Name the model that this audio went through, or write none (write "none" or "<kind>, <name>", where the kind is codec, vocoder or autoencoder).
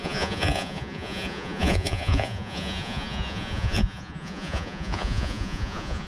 vocoder, Vocos